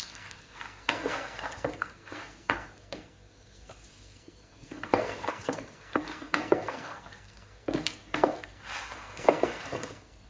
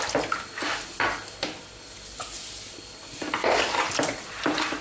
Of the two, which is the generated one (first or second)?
first